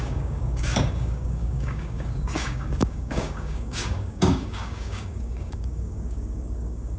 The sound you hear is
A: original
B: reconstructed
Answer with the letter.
B